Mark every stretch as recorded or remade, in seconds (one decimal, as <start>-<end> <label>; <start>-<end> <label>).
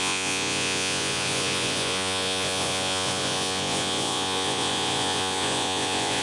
0.0-6.2 remade